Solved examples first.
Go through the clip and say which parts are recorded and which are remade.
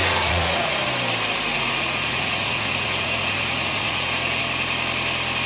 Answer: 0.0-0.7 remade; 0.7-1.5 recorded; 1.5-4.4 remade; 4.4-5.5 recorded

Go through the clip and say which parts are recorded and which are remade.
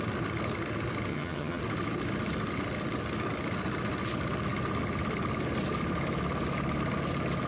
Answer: 0.0-1.1 recorded; 1.1-1.6 remade; 1.6-7.5 recorded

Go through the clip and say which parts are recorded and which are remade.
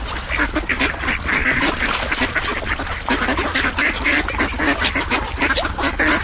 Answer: 0.0-6.2 recorded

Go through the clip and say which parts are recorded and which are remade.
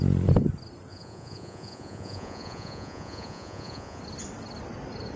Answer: 0.0-0.9 recorded; 0.9-4.0 remade; 4.0-5.2 recorded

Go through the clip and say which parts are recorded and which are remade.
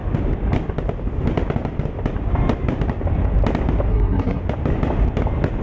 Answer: 0.0-3.9 recorded; 3.9-4.4 remade; 4.4-5.6 recorded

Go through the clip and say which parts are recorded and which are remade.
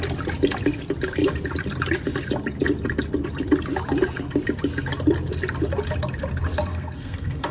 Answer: 0.0-6.7 recorded; 6.7-7.5 remade